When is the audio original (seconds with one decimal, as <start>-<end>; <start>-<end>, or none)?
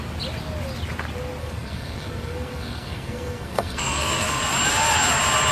0.0-1.4; 4.4-5.5